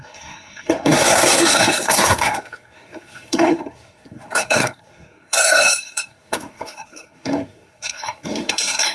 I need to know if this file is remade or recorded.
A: remade